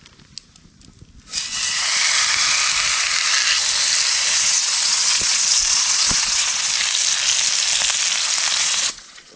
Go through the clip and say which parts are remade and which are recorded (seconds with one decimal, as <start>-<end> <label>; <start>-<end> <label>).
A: 0.0-4.2 recorded; 4.2-6.7 remade; 6.7-8.6 recorded; 8.6-9.4 remade